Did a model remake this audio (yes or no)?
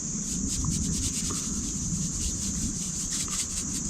yes